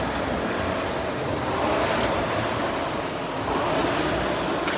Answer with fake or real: real